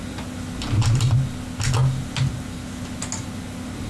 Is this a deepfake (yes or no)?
no